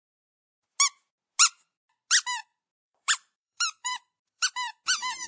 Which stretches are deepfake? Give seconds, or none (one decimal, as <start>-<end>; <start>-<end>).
2.5-4.5